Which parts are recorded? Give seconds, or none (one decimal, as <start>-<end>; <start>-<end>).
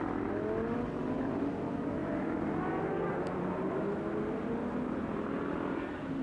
0.0-2.0; 4.3-6.2